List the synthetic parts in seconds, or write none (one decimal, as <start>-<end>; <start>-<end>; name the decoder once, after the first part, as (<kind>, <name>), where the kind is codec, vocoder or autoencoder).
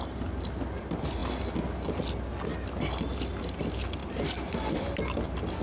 none